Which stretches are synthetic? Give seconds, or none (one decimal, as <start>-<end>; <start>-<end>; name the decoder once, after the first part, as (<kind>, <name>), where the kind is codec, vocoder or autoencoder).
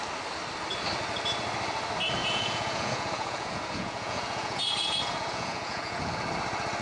2.2-6.1 (vocoder, Vocos)